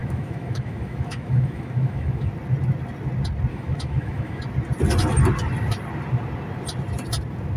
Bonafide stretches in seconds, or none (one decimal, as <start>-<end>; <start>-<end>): 2.3-3.5; 4.4-7.6